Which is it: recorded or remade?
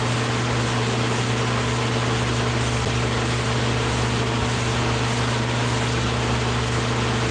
recorded